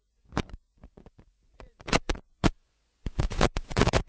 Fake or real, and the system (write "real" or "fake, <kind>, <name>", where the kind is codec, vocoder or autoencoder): fake, vocoder, Vocos